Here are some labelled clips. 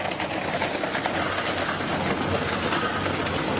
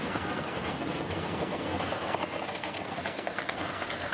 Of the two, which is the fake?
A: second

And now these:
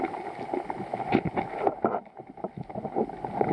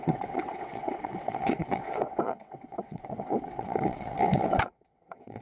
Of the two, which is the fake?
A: second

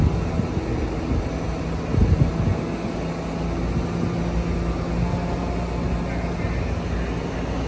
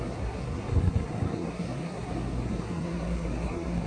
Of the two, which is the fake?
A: second